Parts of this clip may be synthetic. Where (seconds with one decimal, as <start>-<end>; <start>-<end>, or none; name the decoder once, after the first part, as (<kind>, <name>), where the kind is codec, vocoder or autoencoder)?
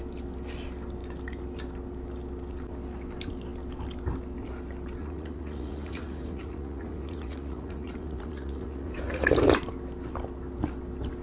5.0-9.3 (vocoder, Vocos)